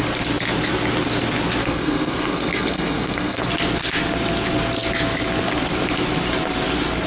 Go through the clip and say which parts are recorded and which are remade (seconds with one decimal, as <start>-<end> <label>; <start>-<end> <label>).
0.0-1.6 recorded; 1.6-3.5 remade; 3.5-7.1 recorded